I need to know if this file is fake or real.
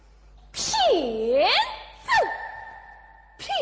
real